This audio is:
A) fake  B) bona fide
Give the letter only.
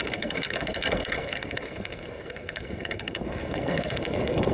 A